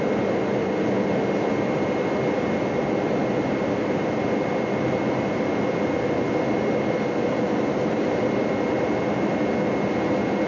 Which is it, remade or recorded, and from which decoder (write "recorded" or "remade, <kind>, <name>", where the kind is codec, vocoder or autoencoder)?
recorded